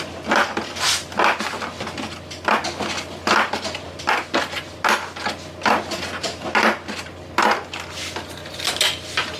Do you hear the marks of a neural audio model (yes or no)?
no